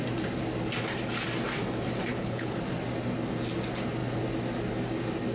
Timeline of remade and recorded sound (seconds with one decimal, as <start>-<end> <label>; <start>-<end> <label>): 0.0-2.1 recorded; 2.1-2.6 remade; 2.6-5.3 recorded